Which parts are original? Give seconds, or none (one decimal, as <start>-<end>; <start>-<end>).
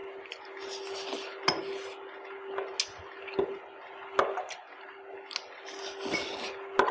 0.0-6.9